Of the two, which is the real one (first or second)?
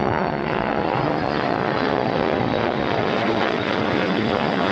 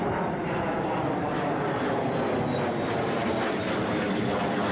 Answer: second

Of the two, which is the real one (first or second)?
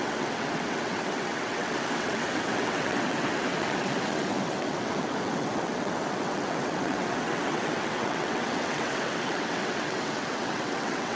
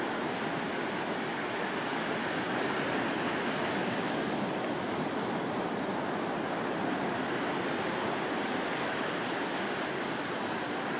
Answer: second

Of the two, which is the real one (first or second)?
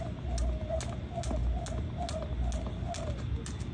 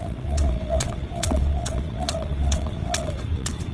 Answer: first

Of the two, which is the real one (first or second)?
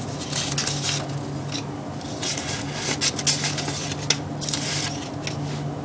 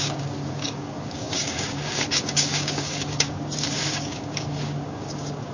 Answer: first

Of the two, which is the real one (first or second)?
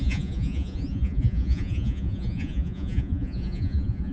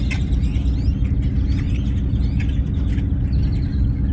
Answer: second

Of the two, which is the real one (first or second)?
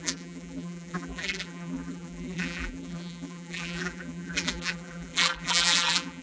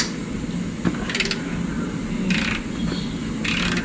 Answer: second